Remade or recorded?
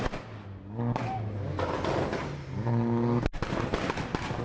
recorded